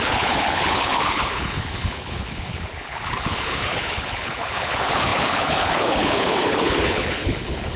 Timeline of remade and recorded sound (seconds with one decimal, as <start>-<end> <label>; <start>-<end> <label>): 0.0-7.8 remade

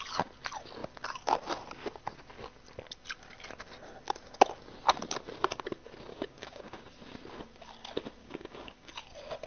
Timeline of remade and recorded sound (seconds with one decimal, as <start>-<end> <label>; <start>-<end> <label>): 0.0-6.1 recorded; 6.1-6.8 remade; 6.8-8.2 recorded; 8.2-8.9 remade; 8.9-9.5 recorded

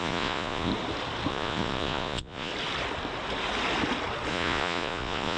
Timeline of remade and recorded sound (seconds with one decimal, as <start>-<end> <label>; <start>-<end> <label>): 0.0-0.7 remade; 0.7-1.3 recorded; 1.3-2.5 remade; 2.5-4.3 recorded; 4.3-5.4 remade

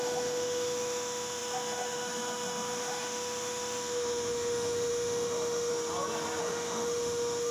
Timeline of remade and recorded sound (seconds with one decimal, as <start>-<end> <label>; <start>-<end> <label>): 0.0-5.7 remade; 5.7-6.4 recorded; 6.4-7.5 remade

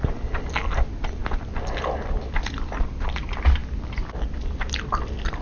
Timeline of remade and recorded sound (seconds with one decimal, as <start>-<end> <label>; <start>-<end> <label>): 0.0-5.4 recorded